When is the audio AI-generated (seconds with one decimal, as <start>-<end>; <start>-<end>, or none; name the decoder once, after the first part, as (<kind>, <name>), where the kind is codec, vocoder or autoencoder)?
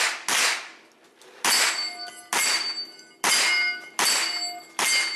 none